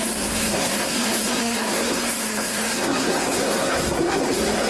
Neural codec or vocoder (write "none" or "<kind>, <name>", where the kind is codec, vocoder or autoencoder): codec, SNAC